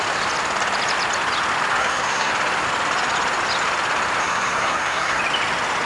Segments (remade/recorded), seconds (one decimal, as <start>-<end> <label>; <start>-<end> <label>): 0.0-1.8 recorded; 1.8-2.3 remade; 2.3-4.2 recorded; 4.2-5.2 remade; 5.2-5.9 recorded